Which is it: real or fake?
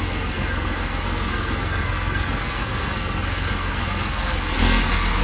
fake